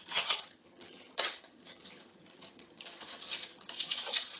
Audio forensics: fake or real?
fake